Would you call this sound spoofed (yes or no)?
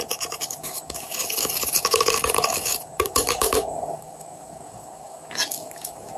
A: yes